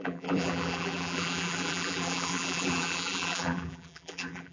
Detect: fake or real fake